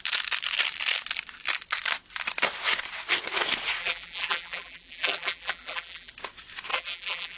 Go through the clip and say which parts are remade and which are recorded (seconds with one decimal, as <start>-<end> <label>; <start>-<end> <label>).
0.0-3.8 recorded; 3.8-6.1 remade; 6.1-6.7 recorded; 6.7-7.4 remade